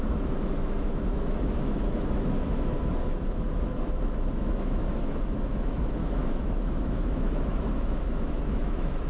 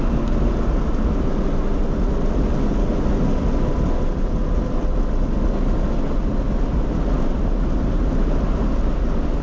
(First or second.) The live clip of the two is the second